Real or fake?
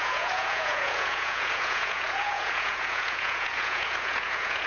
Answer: fake